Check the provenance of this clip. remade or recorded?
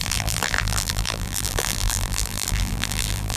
remade